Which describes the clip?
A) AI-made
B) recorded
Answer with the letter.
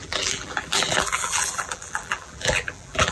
A